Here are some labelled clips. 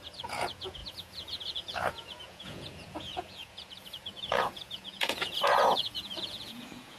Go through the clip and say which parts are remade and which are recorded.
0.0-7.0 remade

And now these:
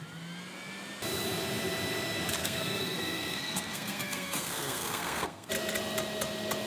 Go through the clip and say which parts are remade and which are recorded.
0.0-2.4 recorded; 2.4-5.5 remade; 5.5-6.7 recorded